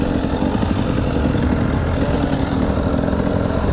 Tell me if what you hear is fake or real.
real